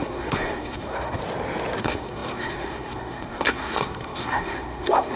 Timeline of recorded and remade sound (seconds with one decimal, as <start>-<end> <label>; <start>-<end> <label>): 0.0-1.2 remade; 1.2-1.8 recorded; 1.8-5.2 remade